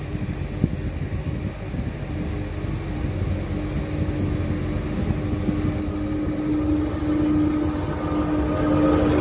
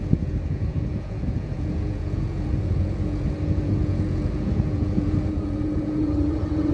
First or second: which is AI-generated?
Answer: second